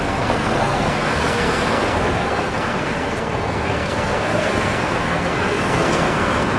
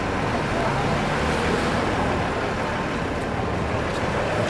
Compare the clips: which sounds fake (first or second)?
first